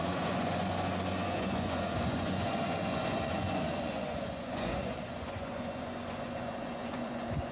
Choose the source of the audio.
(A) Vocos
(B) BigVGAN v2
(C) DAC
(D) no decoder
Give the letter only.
A